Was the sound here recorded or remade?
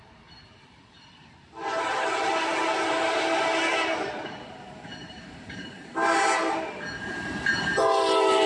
remade